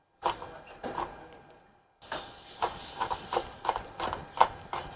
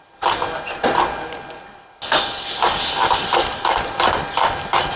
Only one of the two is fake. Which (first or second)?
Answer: first